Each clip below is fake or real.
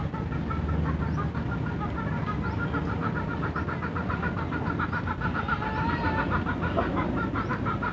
real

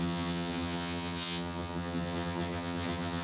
fake